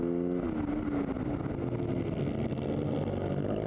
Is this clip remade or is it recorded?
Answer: recorded